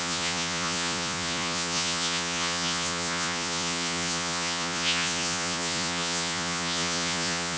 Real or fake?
fake